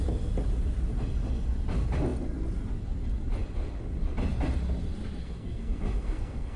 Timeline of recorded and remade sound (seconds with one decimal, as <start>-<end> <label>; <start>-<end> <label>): 0.0-5.2 recorded; 5.2-6.6 remade